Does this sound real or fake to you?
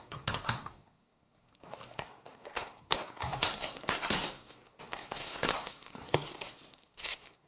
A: fake